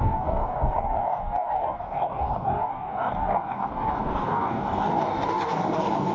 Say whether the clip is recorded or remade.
remade